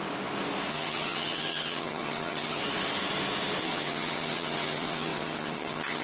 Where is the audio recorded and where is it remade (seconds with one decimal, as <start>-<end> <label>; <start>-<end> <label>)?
0.0-0.7 recorded; 0.7-2.6 remade; 2.6-3.6 recorded; 3.6-6.0 remade